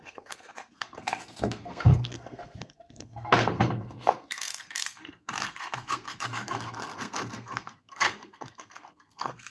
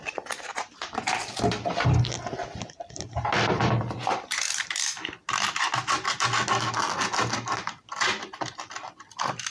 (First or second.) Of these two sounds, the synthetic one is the first